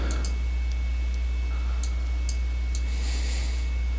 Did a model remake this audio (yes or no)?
no